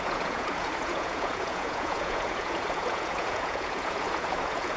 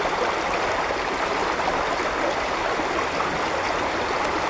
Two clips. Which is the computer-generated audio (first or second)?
first